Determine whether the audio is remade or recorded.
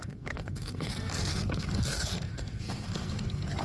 remade